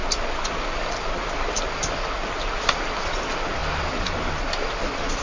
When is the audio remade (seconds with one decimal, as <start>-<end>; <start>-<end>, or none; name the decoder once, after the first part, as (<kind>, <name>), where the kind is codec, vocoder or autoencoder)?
none